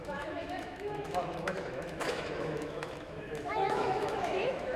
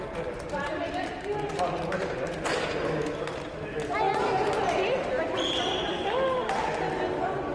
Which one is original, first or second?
second